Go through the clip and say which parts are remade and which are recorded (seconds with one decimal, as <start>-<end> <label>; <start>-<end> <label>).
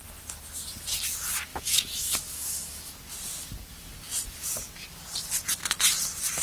0.0-1.5 recorded; 1.5-2.9 remade; 2.9-6.4 recorded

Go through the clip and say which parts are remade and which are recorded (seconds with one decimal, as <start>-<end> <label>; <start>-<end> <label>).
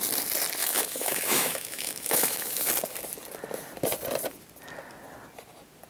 0.0-0.6 recorded; 0.6-2.7 remade; 2.7-5.9 recorded